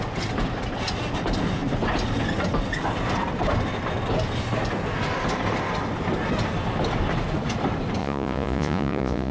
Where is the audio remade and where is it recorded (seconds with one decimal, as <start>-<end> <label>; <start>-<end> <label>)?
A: 0.0-8.0 recorded; 8.0-9.3 remade